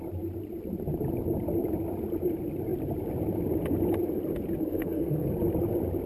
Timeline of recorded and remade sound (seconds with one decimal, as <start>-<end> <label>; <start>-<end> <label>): 0.0-4.7 recorded; 4.7-5.3 remade; 5.3-6.1 recorded